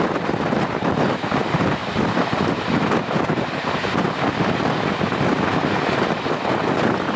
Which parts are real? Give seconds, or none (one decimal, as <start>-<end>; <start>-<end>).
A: 0.0-1.8; 4.7-7.2